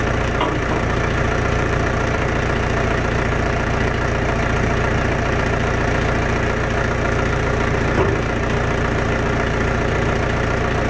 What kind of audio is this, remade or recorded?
remade